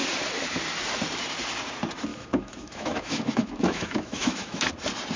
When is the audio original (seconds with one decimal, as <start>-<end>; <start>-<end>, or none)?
0.0-2.1; 4.7-5.2